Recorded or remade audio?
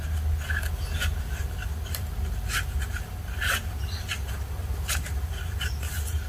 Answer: recorded